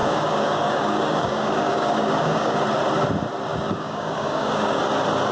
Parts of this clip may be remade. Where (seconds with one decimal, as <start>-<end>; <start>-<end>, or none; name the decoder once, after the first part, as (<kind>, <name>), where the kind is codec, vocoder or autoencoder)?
0.0-2.6 (codec, DAC); 3.5-4.8